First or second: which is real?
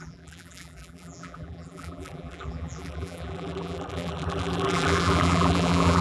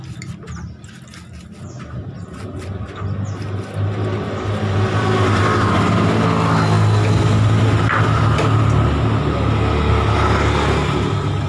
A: second